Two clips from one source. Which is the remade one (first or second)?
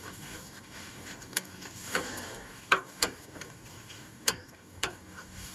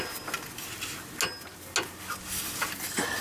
first